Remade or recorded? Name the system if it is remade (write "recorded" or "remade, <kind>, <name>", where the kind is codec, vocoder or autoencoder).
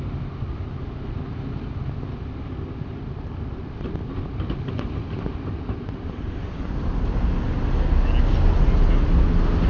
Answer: recorded